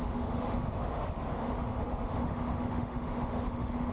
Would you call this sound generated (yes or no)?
yes